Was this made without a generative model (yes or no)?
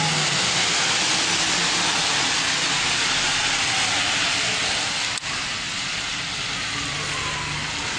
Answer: yes